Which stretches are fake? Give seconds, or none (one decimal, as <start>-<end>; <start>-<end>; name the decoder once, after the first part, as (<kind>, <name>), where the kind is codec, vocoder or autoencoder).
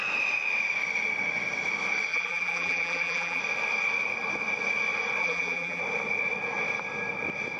2.1-3.4 (vocoder, BigVGAN v2); 5.2-5.8